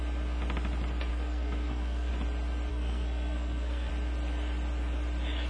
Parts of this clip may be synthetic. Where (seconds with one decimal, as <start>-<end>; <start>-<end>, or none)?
1.1-2.1; 2.7-3.9